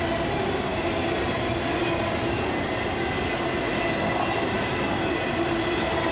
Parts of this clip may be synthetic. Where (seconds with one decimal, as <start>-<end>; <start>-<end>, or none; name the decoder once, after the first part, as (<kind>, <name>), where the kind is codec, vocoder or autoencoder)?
none